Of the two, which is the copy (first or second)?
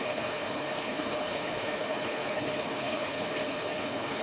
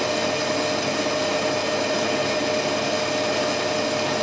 first